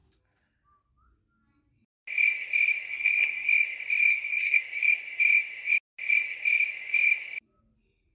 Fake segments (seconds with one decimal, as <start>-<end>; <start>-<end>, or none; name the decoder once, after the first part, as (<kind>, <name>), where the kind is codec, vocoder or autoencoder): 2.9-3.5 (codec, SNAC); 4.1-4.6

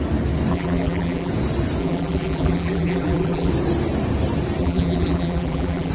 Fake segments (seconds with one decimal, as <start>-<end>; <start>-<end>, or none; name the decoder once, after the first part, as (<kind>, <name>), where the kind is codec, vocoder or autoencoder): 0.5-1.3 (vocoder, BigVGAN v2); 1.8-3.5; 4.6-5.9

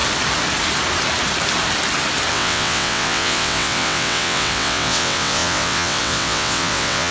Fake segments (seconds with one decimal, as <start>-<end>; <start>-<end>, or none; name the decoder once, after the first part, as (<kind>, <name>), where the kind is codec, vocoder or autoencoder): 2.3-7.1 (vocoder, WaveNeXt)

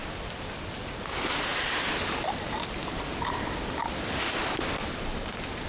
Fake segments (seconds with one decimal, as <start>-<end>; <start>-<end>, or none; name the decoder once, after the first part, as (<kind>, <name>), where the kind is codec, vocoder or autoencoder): none